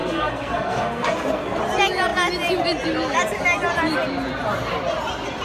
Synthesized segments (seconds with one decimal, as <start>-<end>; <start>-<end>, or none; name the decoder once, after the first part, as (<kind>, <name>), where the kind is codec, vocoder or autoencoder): 0.0-1.6 (codec, SNAC)